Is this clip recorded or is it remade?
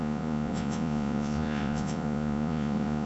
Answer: remade